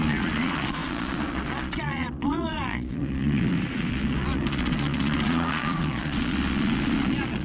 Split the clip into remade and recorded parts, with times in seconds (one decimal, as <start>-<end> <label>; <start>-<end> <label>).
0.0-7.4 remade